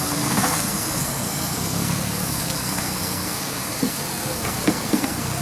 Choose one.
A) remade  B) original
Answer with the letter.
A